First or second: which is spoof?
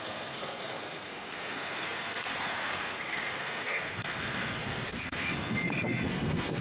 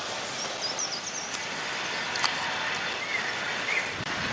first